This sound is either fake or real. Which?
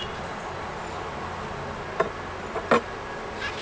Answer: real